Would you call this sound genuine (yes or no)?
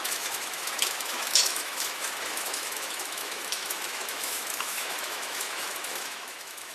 no